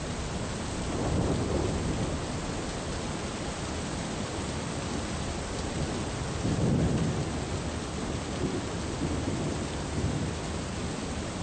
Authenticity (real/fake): real